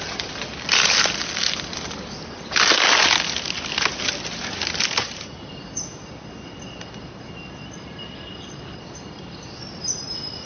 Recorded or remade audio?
recorded